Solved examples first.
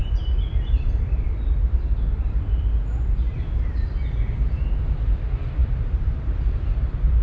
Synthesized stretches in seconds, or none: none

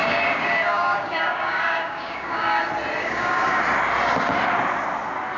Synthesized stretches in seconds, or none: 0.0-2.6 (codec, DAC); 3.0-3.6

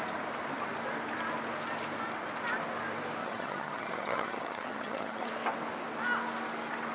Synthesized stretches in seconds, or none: 3.2-5.3 (vocoder, HiFi-GAN)

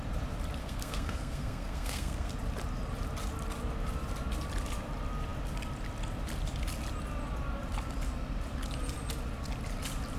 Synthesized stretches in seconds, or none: 0.6-2.3 (codec, SNAC)

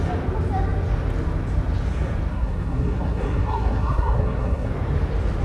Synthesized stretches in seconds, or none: 2.3-4.7 (codec, SNAC)